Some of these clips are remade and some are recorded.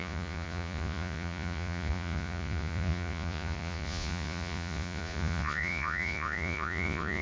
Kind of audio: remade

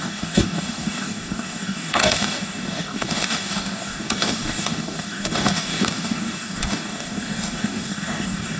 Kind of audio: remade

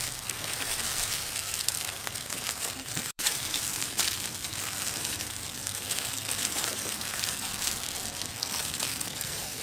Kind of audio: remade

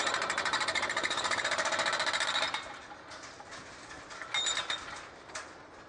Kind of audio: recorded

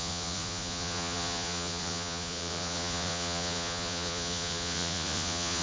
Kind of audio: remade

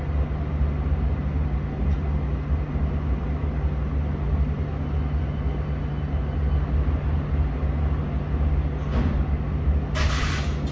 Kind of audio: recorded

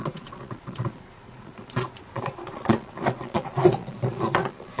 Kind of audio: remade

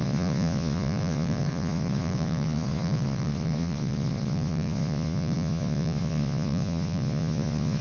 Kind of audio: remade